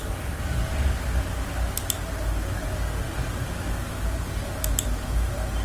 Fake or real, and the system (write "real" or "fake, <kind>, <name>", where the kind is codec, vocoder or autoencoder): real